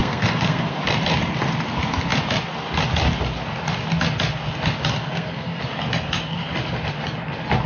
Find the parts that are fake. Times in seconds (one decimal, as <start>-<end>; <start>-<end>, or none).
0.0-0.8; 5.0-5.6